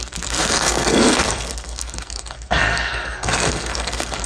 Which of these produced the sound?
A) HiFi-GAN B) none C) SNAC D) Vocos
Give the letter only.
C